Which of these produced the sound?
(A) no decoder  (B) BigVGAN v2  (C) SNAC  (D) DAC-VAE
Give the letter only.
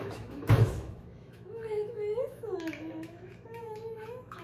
D